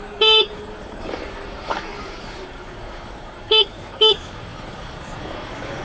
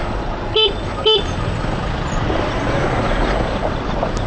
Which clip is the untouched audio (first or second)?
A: second